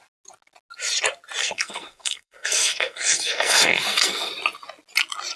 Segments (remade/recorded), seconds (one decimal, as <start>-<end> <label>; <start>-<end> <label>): 0.0-1.4 recorded; 1.4-4.3 remade; 4.3-5.4 recorded